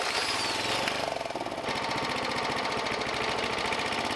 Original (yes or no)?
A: yes